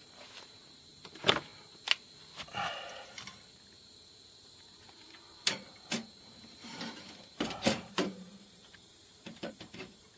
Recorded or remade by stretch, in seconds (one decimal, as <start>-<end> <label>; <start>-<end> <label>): 0.0-1.5 remade; 1.5-3.7 recorded; 3.7-10.2 remade